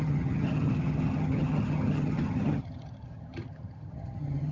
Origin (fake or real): fake